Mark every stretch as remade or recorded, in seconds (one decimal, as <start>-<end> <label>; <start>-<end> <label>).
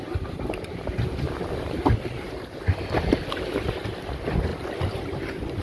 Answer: 0.0-4.5 recorded; 4.5-5.6 remade